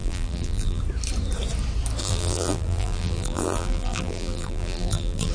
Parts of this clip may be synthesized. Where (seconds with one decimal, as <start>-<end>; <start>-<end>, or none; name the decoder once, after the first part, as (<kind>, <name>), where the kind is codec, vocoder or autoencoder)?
0.0-0.8 (vocoder, BigVGAN v2); 2.0-5.3